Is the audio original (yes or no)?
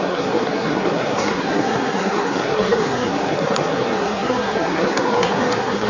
no